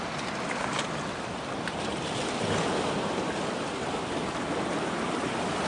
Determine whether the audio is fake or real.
real